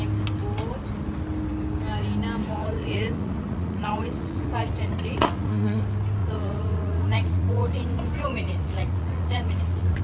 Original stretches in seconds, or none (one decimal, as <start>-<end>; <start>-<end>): 0.0-2.4; 5.8-6.2